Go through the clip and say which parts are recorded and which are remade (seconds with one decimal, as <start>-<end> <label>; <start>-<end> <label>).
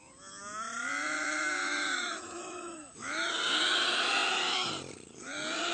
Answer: 0.0-1.6 recorded; 1.6-3.3 remade; 3.3-5.7 recorded